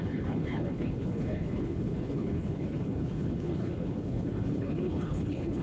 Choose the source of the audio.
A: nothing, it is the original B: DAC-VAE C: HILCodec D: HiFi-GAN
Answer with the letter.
C